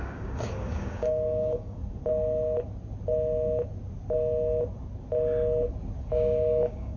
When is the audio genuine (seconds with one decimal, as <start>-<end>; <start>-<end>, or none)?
1.8-6.0